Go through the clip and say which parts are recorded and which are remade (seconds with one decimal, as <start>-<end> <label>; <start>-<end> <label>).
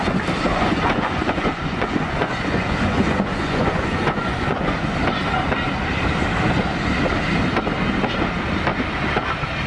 0.0-0.5 recorded; 0.5-4.9 remade; 4.9-9.7 recorded